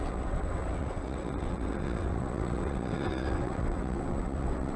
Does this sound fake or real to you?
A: fake